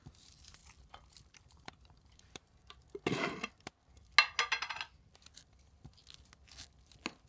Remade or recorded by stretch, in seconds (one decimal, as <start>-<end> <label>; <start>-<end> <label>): 0.0-0.6 remade; 0.6-1.4 recorded; 1.4-2.8 remade; 2.8-7.3 recorded